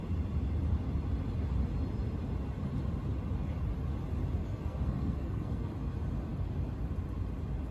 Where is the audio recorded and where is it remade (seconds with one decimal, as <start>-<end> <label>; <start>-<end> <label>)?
0.0-4.4 recorded; 4.4-5.7 remade; 5.7-7.7 recorded